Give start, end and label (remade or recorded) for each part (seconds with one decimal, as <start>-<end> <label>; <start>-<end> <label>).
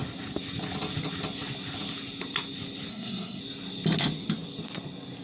0.0-2.9 recorded; 2.9-3.4 remade; 3.4-5.2 recorded